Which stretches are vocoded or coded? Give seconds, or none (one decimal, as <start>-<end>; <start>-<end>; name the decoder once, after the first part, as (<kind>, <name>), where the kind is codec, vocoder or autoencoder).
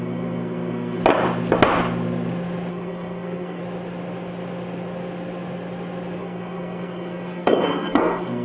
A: 0.0-1.0 (codec, SNAC); 2.7-3.6; 6.2-8.4